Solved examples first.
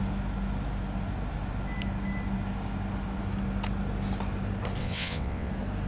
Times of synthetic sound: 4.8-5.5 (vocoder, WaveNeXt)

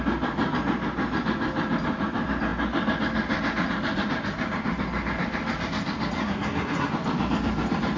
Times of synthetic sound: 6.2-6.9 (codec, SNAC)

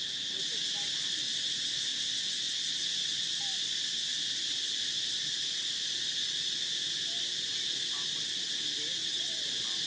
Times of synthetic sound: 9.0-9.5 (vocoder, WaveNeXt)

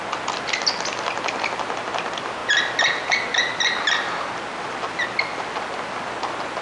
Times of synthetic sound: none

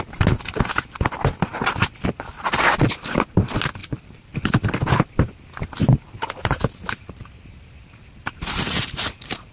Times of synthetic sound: 3.8-4.5 (vocoder, BigVGAN v2); 6.4-9.5